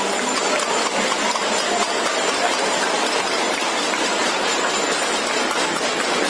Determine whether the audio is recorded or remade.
recorded